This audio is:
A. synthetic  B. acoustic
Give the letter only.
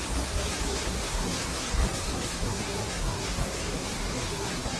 A